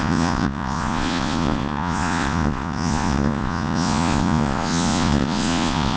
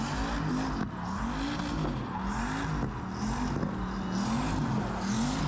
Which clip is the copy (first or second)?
first